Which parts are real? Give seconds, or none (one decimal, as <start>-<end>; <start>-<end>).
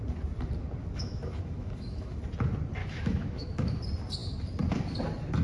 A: 0.0-0.8; 2.2-2.8; 3.8-5.4